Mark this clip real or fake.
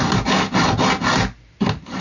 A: real